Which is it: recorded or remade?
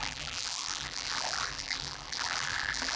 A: remade